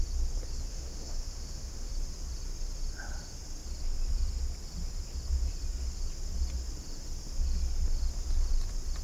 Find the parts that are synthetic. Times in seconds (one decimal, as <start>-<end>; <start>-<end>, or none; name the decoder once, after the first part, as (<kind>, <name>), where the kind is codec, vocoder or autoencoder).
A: 0.7-1.9 (autoencoder, DAC-VAE)